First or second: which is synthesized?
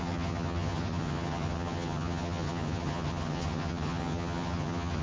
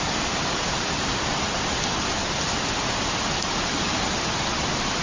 first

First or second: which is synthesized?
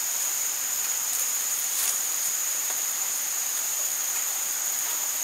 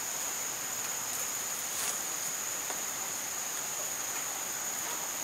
first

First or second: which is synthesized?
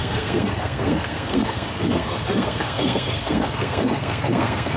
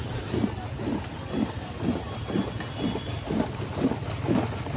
first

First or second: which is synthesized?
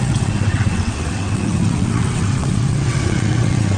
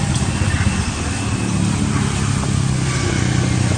first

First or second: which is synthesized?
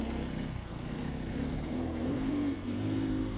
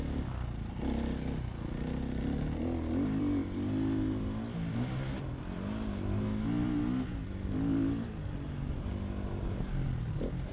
first